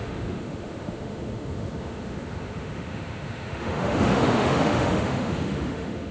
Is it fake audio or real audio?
fake